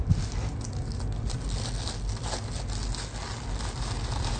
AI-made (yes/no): no